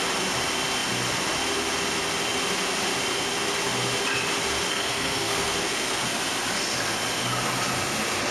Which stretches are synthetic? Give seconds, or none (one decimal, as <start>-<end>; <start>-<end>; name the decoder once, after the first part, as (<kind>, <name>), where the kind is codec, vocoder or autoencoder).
4.7-6.2 (codec, SNAC)